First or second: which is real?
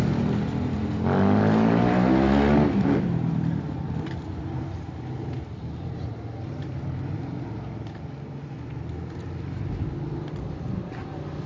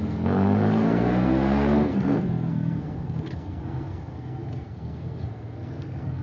first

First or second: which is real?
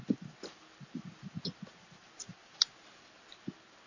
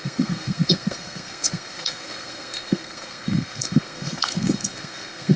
first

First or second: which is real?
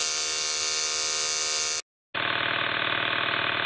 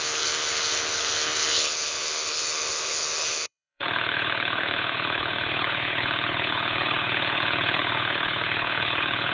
first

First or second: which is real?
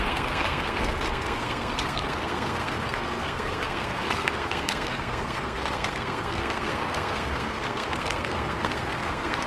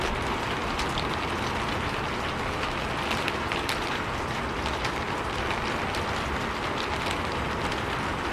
second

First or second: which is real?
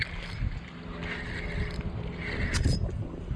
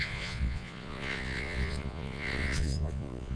first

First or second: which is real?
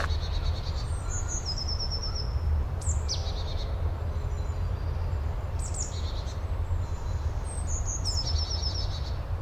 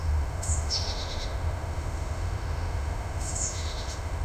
first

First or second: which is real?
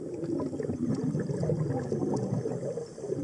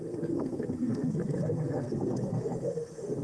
first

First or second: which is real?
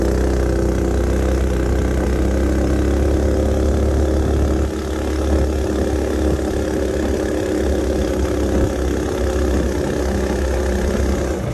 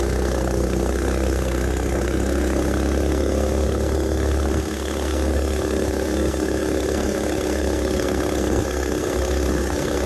first